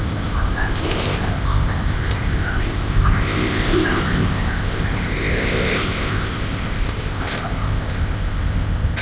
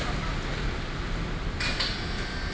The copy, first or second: first